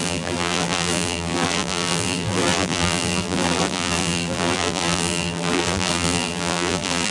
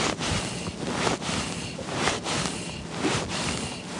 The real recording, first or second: second